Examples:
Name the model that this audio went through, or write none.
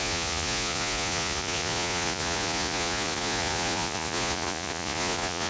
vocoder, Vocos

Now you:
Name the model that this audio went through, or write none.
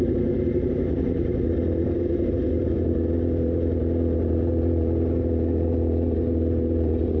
vocoder, BigVGAN v2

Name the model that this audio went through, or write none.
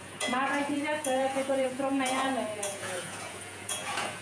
vocoder, Vocos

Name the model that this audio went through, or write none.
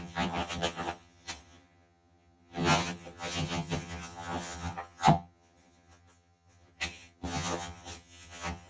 vocoder, HiFi-GAN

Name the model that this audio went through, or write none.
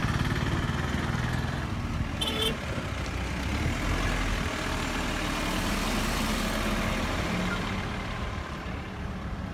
none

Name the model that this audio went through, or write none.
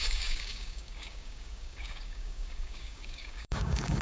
codec, DAC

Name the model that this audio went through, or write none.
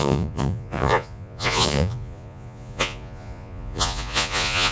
vocoder, Vocos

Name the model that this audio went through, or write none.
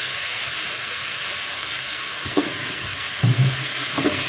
codec, SNAC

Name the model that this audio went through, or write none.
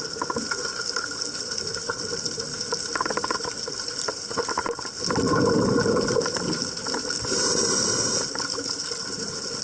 none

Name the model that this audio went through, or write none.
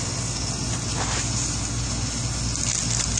none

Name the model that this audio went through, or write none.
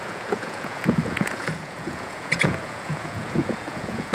vocoder, Vocos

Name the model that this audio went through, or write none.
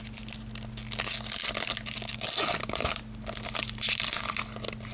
none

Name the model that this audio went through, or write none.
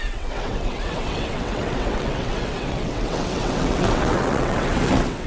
vocoder, WaveNeXt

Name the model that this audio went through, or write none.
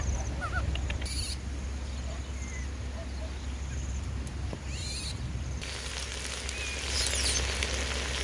none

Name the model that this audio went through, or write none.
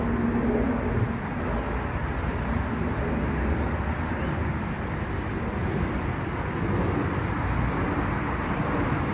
none